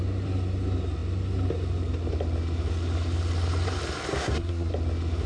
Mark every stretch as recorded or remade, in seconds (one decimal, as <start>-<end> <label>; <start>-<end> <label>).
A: 0.0-4.1 recorded; 4.1-4.7 remade; 4.7-5.3 recorded